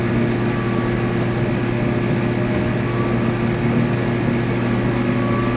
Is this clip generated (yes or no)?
no